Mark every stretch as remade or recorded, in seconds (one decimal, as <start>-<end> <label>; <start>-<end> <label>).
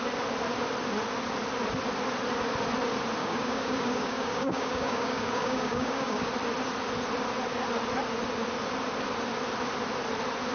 0.0-3.2 recorded; 3.2-6.3 remade; 6.3-10.5 recorded